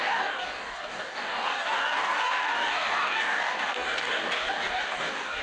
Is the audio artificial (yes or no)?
yes